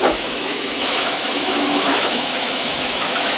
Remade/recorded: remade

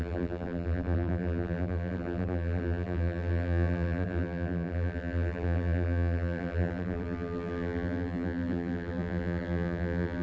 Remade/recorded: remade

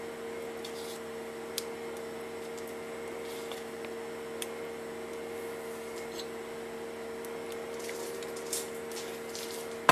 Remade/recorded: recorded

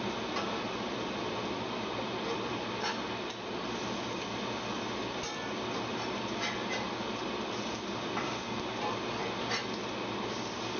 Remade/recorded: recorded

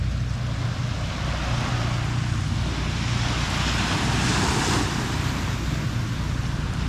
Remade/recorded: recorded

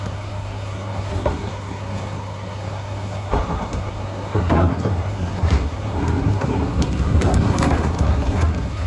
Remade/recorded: remade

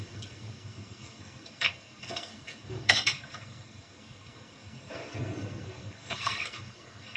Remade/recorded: remade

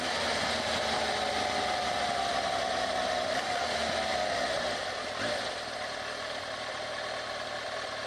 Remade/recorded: recorded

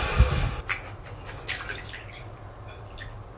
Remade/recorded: recorded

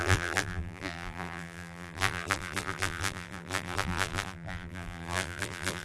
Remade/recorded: remade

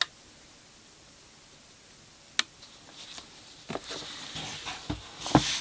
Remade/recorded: recorded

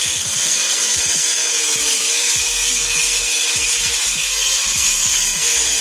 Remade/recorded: remade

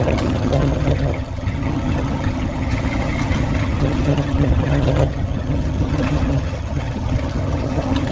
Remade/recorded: remade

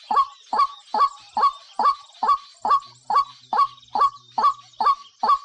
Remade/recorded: recorded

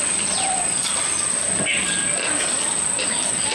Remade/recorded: recorded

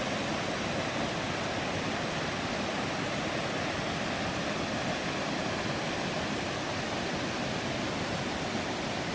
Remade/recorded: recorded